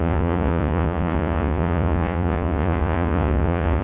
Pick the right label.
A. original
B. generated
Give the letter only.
B